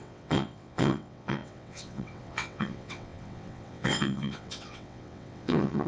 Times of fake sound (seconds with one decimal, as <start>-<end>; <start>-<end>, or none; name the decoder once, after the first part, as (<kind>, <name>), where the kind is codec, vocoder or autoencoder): 0.0-5.9 (vocoder, WaveNeXt)